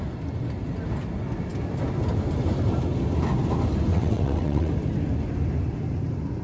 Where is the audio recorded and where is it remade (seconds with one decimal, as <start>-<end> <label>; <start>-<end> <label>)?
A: 0.0-3.9 recorded; 3.9-4.7 remade; 4.7-6.4 recorded